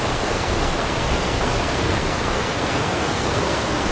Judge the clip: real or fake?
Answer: fake